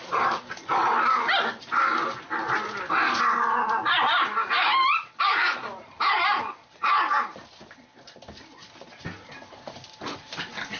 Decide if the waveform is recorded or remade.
recorded